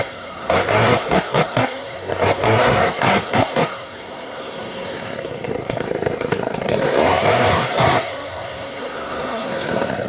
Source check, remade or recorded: remade